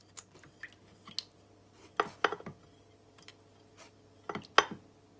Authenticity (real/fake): real